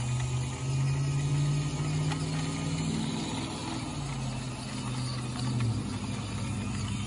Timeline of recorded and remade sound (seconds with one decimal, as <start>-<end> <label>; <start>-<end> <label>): 0.0-7.1 recorded